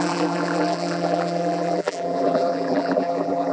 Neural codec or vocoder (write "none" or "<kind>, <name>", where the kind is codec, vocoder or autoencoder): vocoder, BigVGAN v2